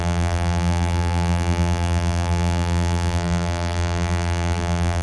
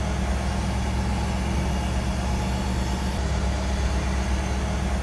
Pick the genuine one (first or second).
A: second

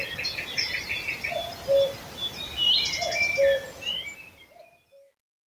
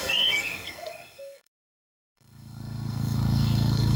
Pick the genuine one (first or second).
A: first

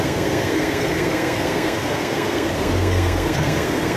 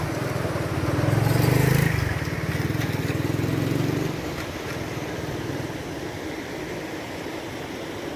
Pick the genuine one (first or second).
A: second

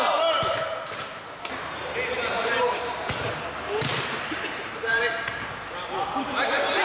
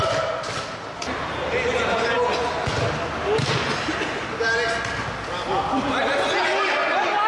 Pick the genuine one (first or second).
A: second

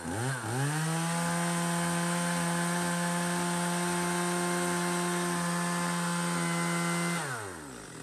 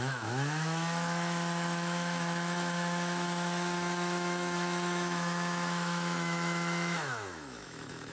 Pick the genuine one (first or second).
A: first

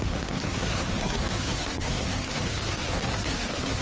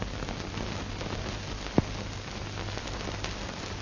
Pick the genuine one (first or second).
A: second